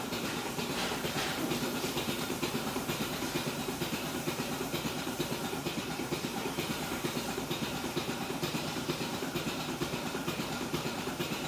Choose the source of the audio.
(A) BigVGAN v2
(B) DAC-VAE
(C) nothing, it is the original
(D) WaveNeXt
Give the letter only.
A